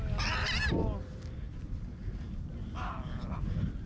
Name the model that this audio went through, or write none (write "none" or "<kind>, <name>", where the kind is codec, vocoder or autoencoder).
none